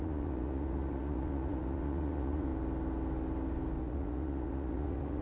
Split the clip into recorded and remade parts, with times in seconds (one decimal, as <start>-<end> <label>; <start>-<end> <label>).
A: 0.0-2.5 remade; 2.5-3.8 recorded; 3.8-5.2 remade